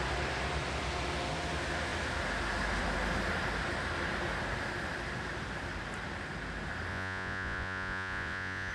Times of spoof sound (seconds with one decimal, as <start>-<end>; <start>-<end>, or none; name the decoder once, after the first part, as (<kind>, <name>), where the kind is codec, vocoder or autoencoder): 6.9-8.7 (vocoder, Vocos)